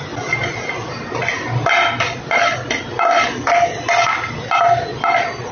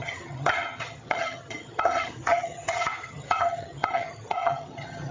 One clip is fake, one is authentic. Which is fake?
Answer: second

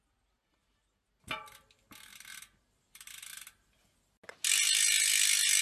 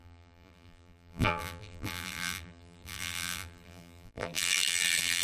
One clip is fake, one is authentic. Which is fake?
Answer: second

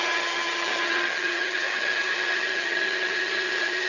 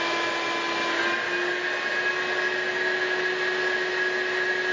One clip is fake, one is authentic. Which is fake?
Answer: first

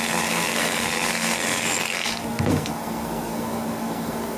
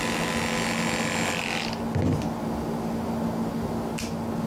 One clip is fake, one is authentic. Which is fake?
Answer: first